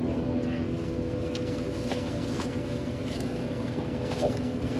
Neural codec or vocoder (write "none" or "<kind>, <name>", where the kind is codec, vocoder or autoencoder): codec, SNAC